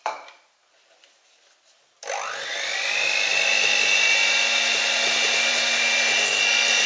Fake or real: real